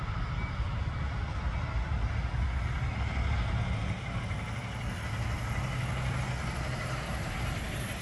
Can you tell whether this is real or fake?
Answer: real